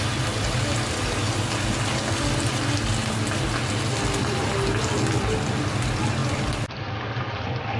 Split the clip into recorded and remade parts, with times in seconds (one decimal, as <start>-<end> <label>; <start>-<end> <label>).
0.0-7.8 recorded